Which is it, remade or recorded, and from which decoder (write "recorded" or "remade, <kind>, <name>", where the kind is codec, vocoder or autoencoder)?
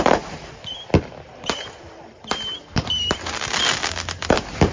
recorded